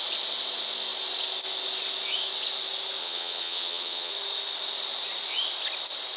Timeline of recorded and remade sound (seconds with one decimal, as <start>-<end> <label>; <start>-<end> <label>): 0.0-3.0 recorded; 3.0-4.1 remade; 4.1-6.2 recorded